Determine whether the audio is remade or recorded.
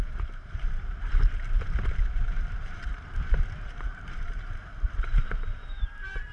remade